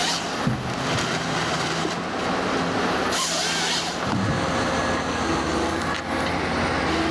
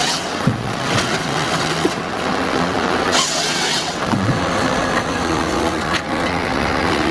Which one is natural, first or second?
first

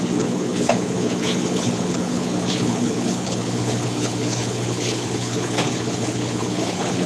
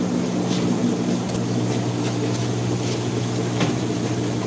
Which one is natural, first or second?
second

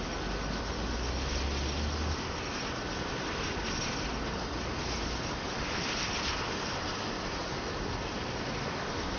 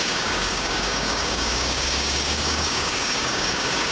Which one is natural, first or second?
first